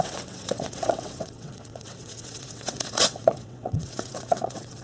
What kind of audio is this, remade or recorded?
remade